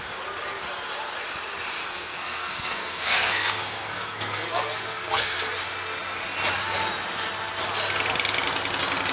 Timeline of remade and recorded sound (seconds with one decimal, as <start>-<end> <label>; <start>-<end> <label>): 0.0-1.8 recorded; 1.8-5.5 remade; 5.5-9.1 recorded